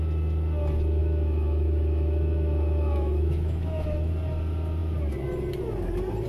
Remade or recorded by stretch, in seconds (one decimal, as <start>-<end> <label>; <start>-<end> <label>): 0.0-1.0 recorded; 1.0-4.1 remade; 4.1-6.3 recorded